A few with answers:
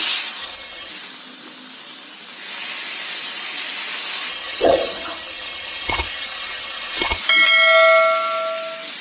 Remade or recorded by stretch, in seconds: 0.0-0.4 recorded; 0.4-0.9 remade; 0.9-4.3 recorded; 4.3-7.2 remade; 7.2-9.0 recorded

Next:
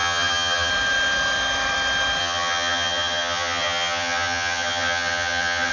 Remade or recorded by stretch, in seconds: 0.0-0.7 remade; 0.7-2.2 recorded; 2.2-5.7 remade